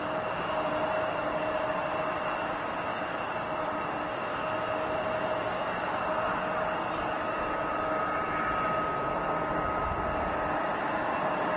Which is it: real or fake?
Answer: real